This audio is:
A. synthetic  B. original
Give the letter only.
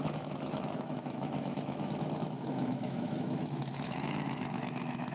A